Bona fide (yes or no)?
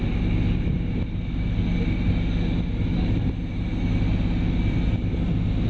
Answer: yes